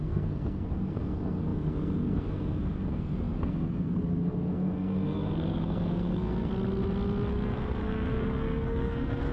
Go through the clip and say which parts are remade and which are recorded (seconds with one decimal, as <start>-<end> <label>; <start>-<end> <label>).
0.0-6.5 remade; 6.5-7.3 recorded; 7.3-9.3 remade

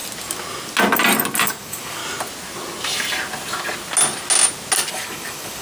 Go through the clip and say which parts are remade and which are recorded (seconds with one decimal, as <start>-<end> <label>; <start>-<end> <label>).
0.0-1.6 recorded; 1.6-2.0 remade; 2.0-4.9 recorded; 4.9-5.6 remade

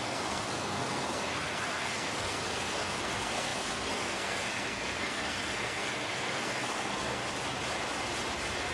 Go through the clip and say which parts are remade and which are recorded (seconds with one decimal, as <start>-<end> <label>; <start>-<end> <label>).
0.0-7.2 remade; 7.2-8.7 recorded

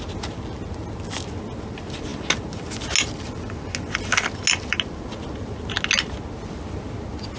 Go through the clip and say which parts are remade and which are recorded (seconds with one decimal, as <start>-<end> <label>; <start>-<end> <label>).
0.0-7.4 recorded

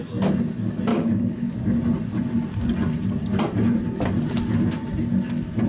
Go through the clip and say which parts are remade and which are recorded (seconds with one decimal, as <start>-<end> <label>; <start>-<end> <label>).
0.0-0.9 recorded; 0.9-1.5 remade; 1.5-5.7 recorded

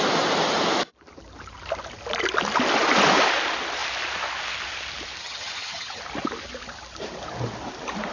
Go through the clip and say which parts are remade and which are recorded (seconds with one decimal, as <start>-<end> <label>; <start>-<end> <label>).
0.0-5.2 recorded; 5.2-6.0 remade; 6.0-8.1 recorded

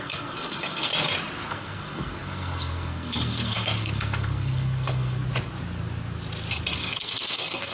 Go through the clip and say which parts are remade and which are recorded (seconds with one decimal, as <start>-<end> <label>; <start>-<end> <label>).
0.0-0.9 remade; 0.9-1.5 recorded; 1.5-5.2 remade; 5.2-6.8 recorded; 6.8-7.7 remade